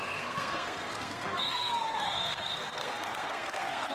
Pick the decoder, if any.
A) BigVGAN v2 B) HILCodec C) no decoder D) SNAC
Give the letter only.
D